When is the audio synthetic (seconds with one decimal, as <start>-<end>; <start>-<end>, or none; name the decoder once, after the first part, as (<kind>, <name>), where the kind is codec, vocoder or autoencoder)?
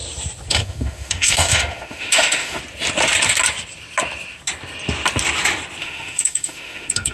0.5-2.6 (autoencoder, DAC-VAE); 5.8-7.1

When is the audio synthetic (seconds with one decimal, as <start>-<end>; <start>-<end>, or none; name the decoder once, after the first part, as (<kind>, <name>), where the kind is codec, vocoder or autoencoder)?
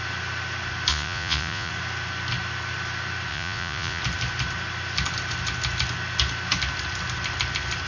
0.9-1.7 (vocoder, Vocos); 3.3-4.0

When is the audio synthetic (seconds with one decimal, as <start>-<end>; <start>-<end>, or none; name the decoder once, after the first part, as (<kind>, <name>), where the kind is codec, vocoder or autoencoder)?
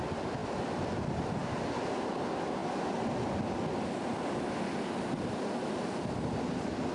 none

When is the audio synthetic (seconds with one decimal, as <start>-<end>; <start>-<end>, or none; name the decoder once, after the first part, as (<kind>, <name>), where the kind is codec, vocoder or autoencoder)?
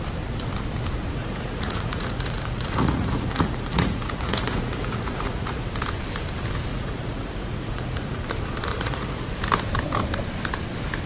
1.2-5.6 (vocoder, Vocos); 6.7-8.2; 8.7-9.3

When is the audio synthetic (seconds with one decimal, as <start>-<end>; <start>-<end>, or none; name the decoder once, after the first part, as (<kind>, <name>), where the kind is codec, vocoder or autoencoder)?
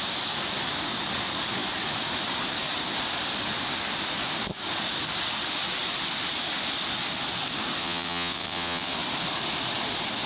7.8-8.9 (vocoder, WaveNeXt)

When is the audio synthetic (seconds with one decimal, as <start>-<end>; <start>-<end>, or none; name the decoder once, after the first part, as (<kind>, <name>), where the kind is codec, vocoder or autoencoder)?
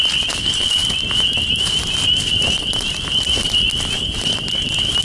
none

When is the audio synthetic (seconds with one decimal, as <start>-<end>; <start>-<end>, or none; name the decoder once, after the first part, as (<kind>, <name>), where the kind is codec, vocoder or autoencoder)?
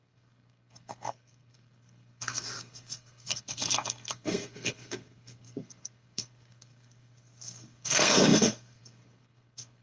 0.0-9.8 (codec, SNAC)